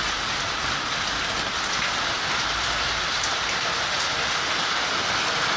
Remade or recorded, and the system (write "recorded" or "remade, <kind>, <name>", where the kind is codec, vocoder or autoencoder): recorded